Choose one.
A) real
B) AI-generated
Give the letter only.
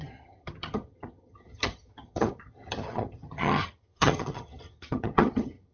B